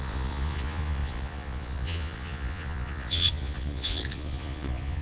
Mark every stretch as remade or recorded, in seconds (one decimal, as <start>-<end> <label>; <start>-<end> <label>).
0.0-5.0 remade